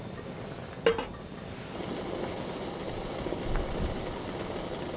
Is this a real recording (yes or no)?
yes